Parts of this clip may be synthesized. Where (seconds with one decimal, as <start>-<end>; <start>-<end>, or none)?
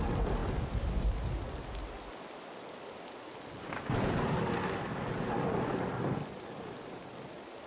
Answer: 0.4-1.1